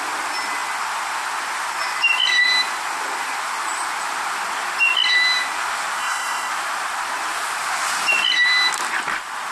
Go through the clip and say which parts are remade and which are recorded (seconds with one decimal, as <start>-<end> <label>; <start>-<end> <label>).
0.0-6.0 recorded; 6.0-6.5 remade; 6.5-9.5 recorded